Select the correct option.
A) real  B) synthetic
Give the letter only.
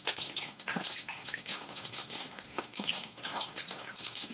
B